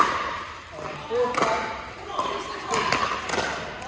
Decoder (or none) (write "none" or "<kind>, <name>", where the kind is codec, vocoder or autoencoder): none